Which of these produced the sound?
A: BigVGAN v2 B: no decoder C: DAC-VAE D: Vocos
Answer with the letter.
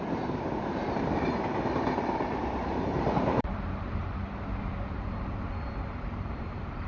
A